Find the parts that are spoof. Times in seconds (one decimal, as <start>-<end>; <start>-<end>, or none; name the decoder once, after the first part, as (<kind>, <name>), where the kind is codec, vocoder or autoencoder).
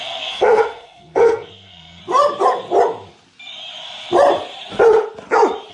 0.0-2.0 (codec, SNAC)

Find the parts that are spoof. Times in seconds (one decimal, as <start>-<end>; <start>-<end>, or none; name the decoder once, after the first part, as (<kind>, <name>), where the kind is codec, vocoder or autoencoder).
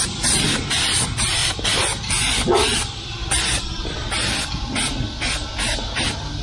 1.4-5.2 (vocoder, BigVGAN v2)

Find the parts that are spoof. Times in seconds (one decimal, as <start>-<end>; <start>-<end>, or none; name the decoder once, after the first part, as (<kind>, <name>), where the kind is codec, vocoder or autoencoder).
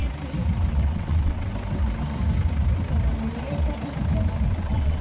0.7-1.5 (vocoder, WaveNeXt); 4.5-5.0